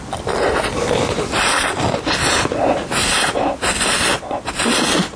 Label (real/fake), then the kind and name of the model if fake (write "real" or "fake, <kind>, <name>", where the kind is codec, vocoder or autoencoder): real